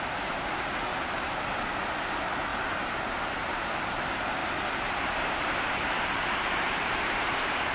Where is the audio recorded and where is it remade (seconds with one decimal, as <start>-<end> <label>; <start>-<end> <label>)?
0.0-0.9 recorded; 0.9-1.4 remade; 1.4-2.5 recorded; 2.5-3.2 remade; 3.2-4.4 recorded; 4.4-7.7 remade